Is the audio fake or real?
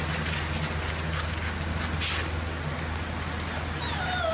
real